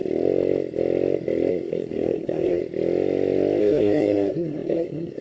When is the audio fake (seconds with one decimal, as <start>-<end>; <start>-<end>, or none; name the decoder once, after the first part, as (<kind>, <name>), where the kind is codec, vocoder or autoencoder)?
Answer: 1.5-2.6 (codec, SNAC); 3.6-5.2